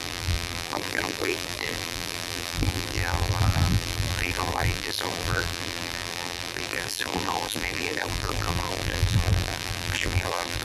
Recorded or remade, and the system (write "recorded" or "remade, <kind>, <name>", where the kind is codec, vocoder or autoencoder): remade, vocoder, BigVGAN v2